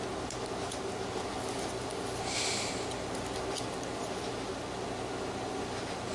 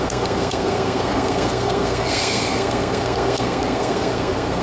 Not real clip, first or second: second